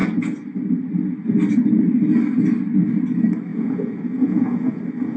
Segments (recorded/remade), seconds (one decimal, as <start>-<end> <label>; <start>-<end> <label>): 0.0-3.5 recorded; 3.5-4.8 remade; 4.8-5.2 recorded